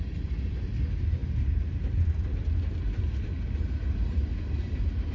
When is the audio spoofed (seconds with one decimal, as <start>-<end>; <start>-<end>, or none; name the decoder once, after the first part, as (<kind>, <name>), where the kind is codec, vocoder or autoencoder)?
none